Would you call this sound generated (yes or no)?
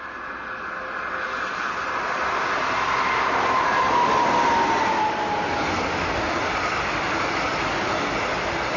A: no